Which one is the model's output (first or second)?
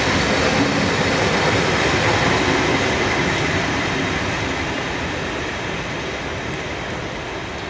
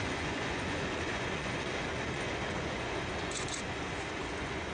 second